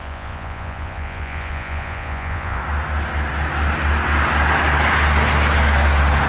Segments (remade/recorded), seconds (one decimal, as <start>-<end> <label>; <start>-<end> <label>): 0.0-2.6 remade; 2.6-6.3 recorded